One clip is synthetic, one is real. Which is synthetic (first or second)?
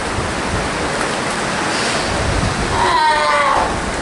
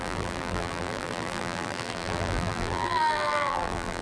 second